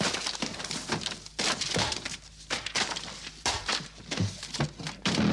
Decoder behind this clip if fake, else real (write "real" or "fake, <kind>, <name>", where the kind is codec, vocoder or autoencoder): fake, vocoder, BigVGAN v2